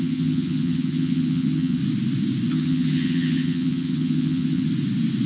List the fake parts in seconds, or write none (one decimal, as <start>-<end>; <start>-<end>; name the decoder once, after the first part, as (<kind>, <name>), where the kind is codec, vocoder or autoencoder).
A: 0.0-1.8 (vocoder, HiFi-GAN); 2.5-4.7